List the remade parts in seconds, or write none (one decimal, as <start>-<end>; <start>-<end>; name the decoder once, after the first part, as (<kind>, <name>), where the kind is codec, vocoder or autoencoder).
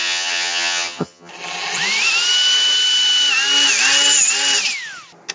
0.0-1.3 (vocoder, HiFi-GAN)